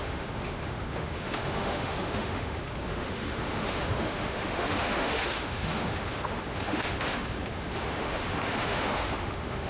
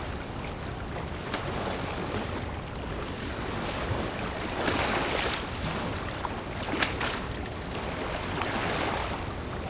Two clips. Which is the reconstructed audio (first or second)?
first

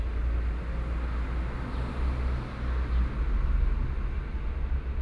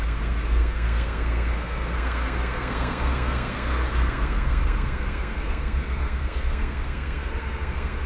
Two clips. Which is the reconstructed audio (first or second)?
second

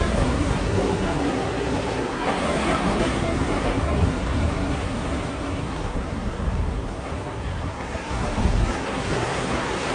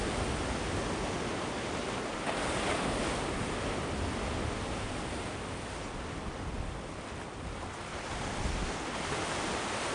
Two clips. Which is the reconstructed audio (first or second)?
first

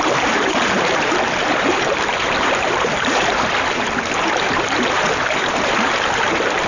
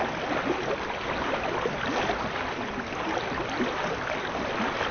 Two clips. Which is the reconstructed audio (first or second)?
first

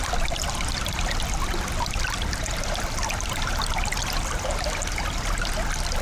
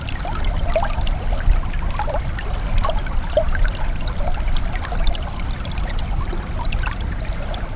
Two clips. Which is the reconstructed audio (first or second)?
second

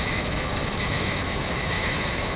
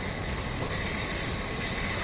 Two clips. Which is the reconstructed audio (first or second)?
first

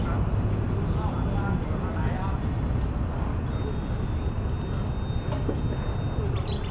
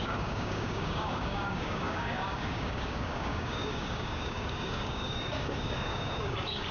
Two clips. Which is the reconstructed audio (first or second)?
second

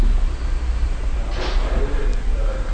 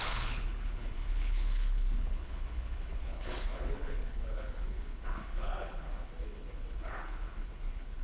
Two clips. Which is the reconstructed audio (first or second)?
second